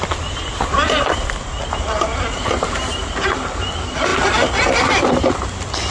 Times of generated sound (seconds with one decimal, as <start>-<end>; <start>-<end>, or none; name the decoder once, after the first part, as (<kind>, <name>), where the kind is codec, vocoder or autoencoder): none